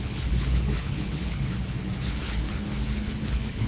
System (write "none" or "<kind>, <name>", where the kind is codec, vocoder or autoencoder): codec, HILCodec